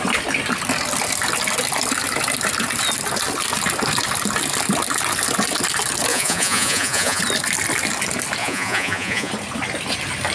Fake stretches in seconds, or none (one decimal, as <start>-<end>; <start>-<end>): 6.1-7.2; 8.4-9.3